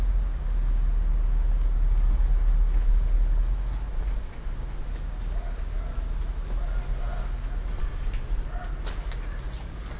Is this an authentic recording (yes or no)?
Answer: yes